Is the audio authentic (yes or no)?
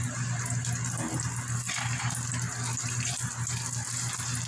yes